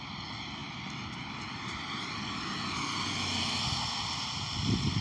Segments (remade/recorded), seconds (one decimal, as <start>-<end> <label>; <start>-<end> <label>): 0.0-5.0 recorded